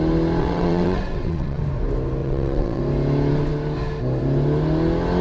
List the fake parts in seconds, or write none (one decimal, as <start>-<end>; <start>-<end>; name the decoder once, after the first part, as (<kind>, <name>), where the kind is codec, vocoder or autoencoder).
0.4-1.6 (vocoder, WaveNeXt); 2.2-2.8